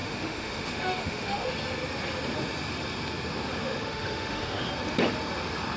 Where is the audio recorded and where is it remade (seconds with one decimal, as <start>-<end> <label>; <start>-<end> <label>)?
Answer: 0.0-1.5 remade; 1.5-3.6 recorded; 3.6-4.7 remade; 4.7-5.8 recorded